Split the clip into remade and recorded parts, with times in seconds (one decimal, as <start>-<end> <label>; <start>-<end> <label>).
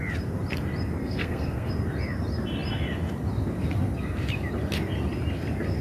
0.0-1.0 recorded; 1.0-1.7 remade; 1.7-5.8 recorded